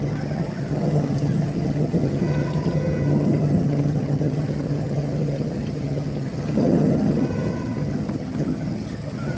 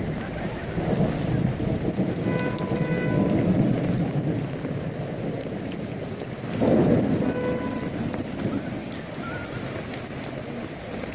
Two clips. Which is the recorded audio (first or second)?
second